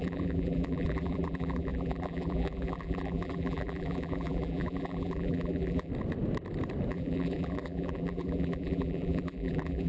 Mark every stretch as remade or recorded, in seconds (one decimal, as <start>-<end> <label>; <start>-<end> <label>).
0.0-5.9 remade; 5.9-6.9 recorded; 6.9-9.9 remade